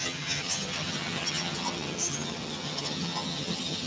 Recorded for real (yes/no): no